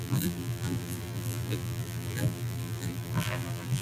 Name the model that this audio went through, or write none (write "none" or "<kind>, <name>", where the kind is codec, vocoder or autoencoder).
vocoder, BigVGAN v2